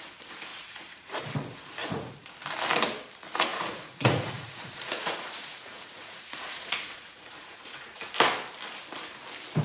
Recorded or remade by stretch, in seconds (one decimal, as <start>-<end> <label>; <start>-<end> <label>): 0.0-0.5 recorded; 0.5-1.2 remade; 1.2-1.8 recorded; 1.8-2.3 remade; 2.3-3.5 recorded; 3.5-8.0 remade; 8.0-9.6 recorded